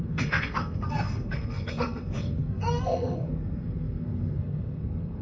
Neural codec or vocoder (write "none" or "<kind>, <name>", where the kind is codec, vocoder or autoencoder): codec, SNAC